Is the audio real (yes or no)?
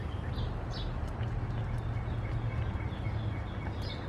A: yes